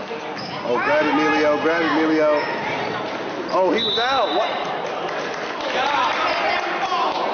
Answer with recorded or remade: recorded